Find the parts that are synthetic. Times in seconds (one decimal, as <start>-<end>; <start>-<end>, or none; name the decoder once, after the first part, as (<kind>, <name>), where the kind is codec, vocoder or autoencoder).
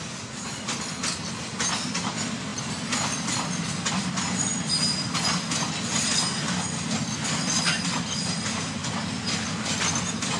none